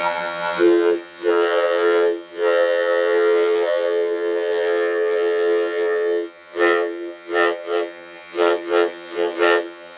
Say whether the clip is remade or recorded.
remade